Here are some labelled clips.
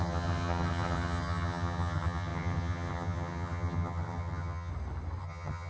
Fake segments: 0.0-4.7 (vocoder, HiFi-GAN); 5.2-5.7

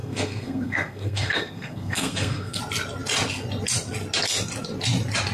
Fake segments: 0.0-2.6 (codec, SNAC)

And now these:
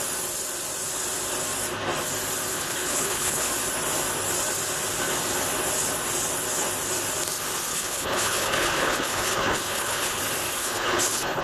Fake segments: 2.5-3.5 (codec, HILCodec); 7.7-10.2; 10.6-11.4